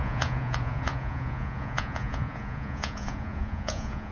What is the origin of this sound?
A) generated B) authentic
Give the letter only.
A